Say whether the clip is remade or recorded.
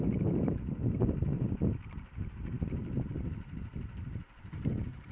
remade